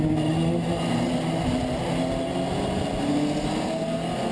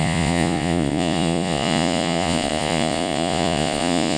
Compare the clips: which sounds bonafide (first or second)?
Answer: first